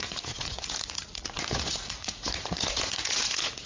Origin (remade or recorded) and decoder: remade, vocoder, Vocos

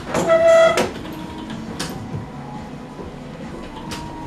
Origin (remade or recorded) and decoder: recorded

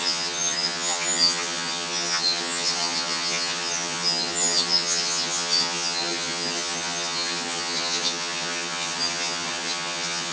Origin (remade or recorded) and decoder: remade, vocoder, HiFi-GAN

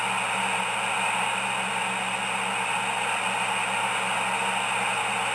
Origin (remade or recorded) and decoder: recorded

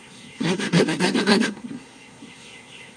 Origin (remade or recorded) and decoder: remade, codec, SNAC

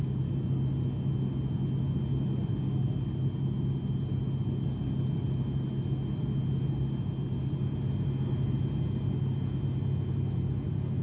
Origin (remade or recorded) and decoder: recorded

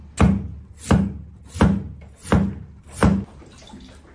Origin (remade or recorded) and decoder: recorded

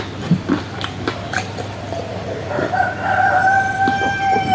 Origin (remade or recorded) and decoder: remade, vocoder, BigVGAN v2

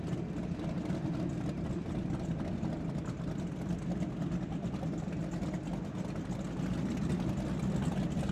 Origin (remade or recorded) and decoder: recorded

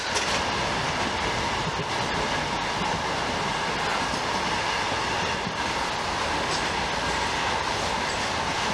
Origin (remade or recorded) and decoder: recorded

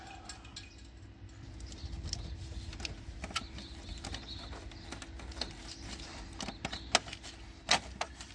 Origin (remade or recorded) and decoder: recorded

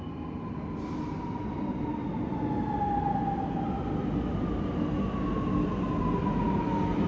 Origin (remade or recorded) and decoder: recorded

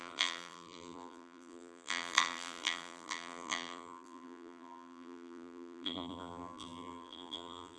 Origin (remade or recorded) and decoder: remade, vocoder, BigVGAN v2